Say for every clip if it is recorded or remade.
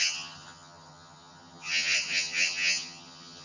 remade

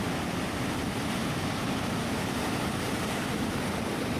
recorded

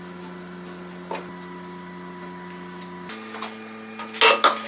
recorded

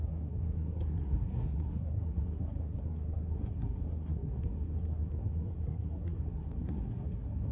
remade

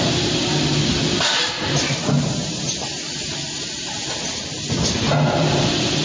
recorded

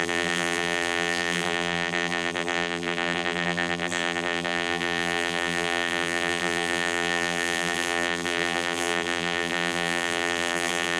remade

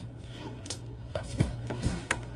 remade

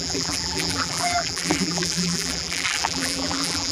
remade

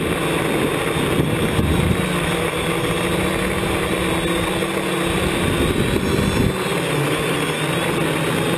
recorded